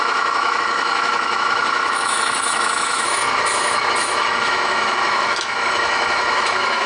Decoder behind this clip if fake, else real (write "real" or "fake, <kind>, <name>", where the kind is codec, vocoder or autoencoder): fake, autoencoder, DAC-VAE